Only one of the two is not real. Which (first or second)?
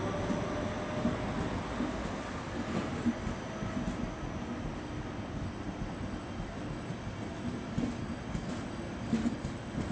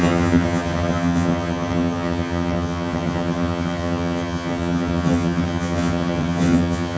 second